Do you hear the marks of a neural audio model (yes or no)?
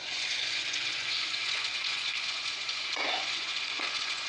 yes